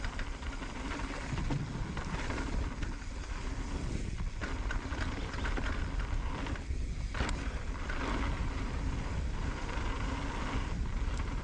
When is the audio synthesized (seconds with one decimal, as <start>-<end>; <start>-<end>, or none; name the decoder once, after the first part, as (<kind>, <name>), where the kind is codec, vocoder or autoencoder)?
none